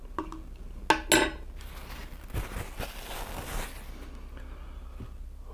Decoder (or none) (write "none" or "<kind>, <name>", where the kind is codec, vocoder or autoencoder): none